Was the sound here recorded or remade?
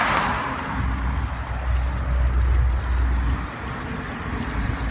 recorded